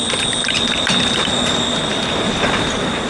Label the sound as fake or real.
real